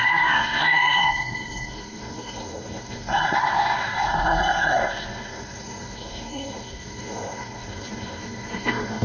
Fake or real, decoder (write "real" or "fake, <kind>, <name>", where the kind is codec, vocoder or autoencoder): fake, codec, SNAC